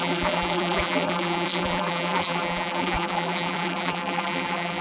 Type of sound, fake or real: fake